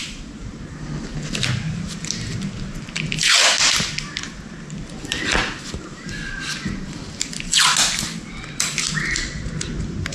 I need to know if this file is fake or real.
real